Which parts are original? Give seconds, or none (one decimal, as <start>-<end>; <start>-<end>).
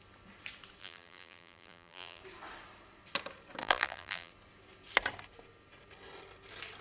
0.0-0.8; 2.2-3.6; 4.3-6.8